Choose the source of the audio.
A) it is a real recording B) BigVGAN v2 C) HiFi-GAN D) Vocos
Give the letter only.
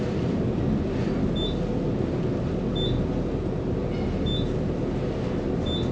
A